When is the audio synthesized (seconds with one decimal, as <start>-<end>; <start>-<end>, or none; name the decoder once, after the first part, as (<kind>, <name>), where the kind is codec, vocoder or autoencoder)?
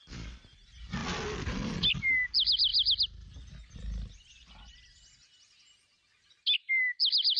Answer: none